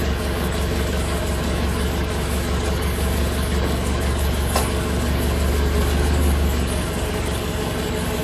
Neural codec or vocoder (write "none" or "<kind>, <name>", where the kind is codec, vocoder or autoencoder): codec, DAC